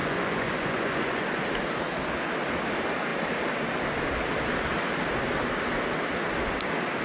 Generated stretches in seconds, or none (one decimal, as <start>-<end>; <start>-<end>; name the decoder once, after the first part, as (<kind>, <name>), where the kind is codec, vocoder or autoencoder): 0.0-1.4 (vocoder, Vocos)